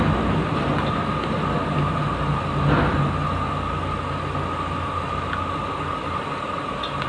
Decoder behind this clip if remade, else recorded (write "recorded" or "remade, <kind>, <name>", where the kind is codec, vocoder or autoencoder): recorded